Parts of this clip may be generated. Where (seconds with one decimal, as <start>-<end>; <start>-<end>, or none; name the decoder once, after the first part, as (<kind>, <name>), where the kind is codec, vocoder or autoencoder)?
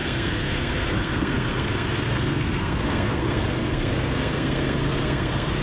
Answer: 0.0-5.6 (codec, SNAC)